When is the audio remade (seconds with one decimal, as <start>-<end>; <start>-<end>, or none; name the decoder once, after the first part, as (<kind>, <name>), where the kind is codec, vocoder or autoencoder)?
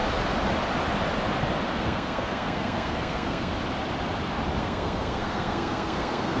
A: 1.8-3.5 (codec, SNAC); 4.6-6.4